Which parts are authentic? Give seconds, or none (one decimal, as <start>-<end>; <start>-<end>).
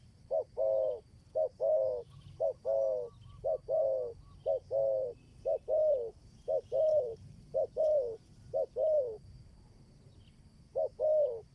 0.0-6.9; 7.8-11.5